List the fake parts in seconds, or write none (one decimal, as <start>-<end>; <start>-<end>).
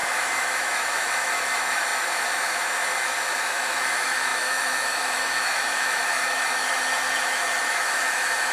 0.0-8.5